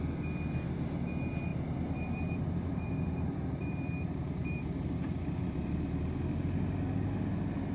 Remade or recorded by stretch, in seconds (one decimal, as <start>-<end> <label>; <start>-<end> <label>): 0.0-1.5 recorded; 1.5-5.2 remade; 5.2-7.7 recorded

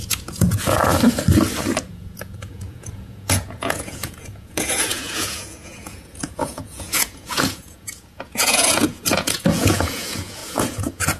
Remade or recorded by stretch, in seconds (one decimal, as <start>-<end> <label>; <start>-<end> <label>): 0.0-0.8 remade; 0.8-1.9 recorded; 1.9-11.2 remade

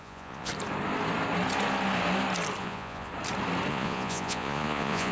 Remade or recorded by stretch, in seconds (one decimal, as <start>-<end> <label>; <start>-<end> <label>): 0.0-0.5 remade; 0.5-2.6 recorded; 2.6-3.1 remade; 3.1-3.7 recorded; 3.7-5.1 remade

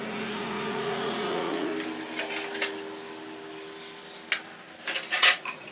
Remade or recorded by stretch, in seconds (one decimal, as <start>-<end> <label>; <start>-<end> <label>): 0.0-1.7 remade; 1.7-5.1 recorded; 5.1-5.7 remade

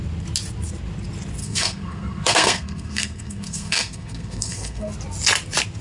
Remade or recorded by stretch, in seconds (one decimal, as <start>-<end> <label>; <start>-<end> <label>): 0.0-1.4 recorded; 1.4-4.9 remade; 4.9-5.8 recorded

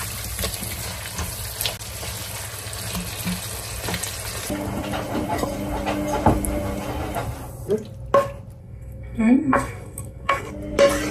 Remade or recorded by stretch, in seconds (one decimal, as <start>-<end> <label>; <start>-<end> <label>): 0.0-8.6 recorded; 8.6-10.5 remade; 10.5-11.1 recorded

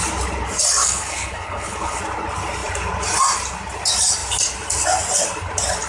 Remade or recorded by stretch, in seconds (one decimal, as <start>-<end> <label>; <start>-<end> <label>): 0.0-0.8 recorded; 0.8-2.0 remade; 2.0-5.9 recorded